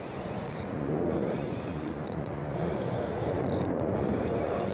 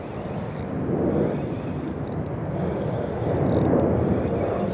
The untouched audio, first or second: second